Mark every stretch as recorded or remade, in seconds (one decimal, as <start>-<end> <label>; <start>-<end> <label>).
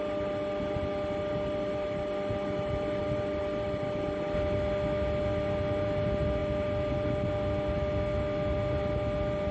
0.0-9.5 recorded